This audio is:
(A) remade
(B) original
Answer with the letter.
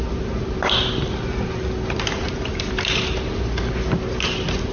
B